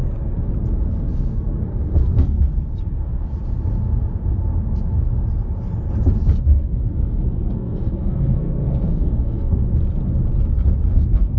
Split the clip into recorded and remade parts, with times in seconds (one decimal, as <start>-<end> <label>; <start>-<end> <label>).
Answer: 0.0-0.9 recorded; 0.9-2.5 remade; 2.5-6.4 recorded; 6.4-9.6 remade; 9.6-10.9 recorded; 10.9-11.4 remade